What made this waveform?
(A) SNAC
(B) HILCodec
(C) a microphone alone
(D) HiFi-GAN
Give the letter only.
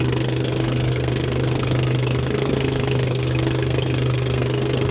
A